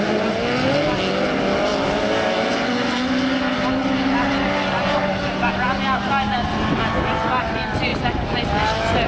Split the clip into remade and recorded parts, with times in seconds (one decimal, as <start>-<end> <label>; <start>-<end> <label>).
0.0-9.1 recorded